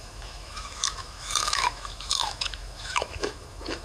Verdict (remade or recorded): remade